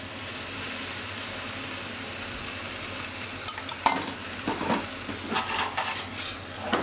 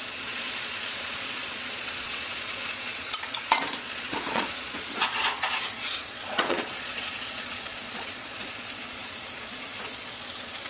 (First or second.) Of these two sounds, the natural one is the first